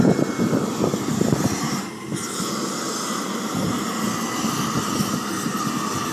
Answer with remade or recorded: recorded